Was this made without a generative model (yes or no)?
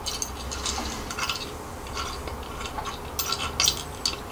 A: yes